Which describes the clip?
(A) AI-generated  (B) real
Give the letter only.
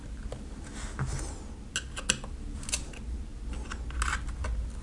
B